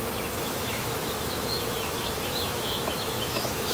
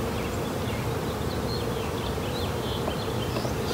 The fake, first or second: first